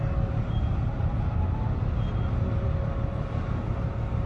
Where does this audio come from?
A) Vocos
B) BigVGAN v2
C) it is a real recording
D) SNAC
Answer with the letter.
C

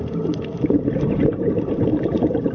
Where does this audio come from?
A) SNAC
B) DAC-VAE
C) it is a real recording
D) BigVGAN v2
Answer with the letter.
D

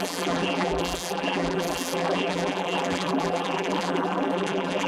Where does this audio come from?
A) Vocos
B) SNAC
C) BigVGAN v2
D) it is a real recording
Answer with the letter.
C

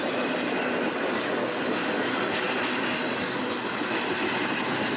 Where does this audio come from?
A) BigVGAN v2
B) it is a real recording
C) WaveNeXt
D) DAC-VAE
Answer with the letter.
B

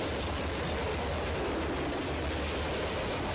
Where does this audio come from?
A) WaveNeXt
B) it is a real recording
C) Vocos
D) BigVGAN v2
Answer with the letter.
B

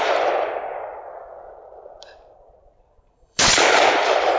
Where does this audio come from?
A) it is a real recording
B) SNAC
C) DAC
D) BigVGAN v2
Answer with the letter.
D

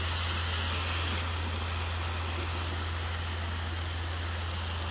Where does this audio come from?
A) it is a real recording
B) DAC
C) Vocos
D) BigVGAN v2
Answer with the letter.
A